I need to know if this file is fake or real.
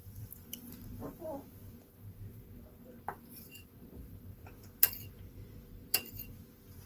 fake